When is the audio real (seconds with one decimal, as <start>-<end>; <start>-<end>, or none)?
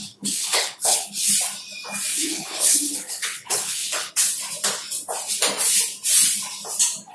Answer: 1.3-2.1; 4.1-7.1